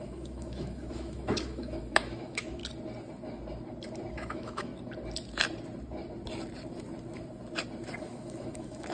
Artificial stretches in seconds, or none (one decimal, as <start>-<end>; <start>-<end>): 0.0-2.6; 4.1-4.7; 8.0-8.9

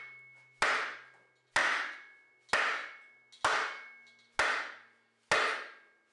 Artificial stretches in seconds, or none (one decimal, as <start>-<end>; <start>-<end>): none

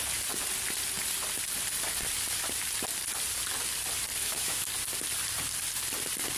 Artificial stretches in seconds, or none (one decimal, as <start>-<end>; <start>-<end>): 4.2-4.7

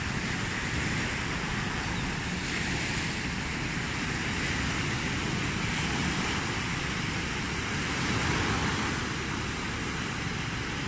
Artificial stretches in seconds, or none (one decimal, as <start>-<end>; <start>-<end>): none

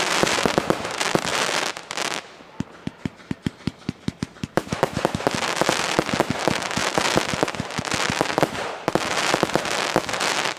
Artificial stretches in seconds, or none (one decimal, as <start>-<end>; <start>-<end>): none

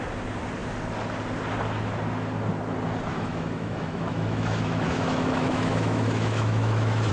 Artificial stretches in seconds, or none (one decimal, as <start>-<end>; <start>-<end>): 3.1-7.1